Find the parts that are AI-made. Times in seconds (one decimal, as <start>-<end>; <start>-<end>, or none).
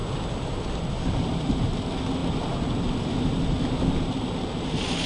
none